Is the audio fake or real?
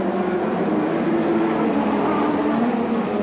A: real